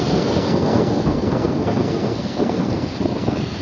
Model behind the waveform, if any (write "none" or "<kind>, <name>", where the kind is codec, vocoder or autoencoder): codec, SNAC